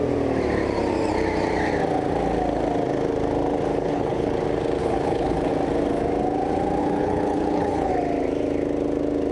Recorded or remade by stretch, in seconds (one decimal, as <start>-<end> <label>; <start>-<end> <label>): 0.0-3.7 recorded; 3.7-4.3 remade; 4.3-4.8 recorded; 4.8-5.5 remade; 5.5-6.8 recorded; 6.8-7.9 remade; 7.9-9.3 recorded